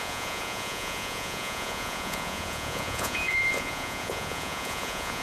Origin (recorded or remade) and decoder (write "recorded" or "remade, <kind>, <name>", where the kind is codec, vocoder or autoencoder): remade, vocoder, Vocos